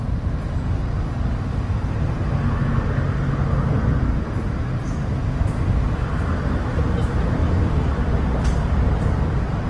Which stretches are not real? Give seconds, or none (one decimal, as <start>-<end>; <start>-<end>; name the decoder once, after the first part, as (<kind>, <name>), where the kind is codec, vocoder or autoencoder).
none